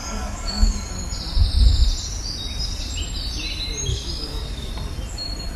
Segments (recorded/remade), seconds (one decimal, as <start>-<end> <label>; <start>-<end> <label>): 0.0-0.9 remade; 0.9-3.9 recorded; 3.9-4.7 remade; 4.7-5.6 recorded